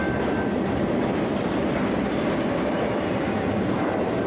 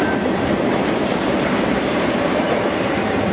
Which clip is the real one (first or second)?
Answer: first